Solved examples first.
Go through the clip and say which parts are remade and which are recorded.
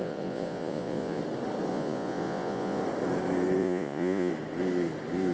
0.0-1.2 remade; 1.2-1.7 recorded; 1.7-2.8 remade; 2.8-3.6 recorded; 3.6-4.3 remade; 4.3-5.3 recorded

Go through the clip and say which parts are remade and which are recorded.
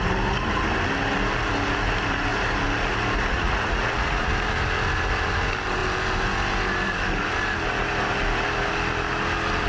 0.0-3.3 recorded; 3.3-4.3 remade; 4.3-9.7 recorded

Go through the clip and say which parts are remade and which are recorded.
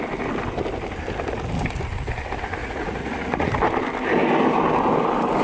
0.0-2.6 recorded; 2.6-3.5 remade; 3.5-5.4 recorded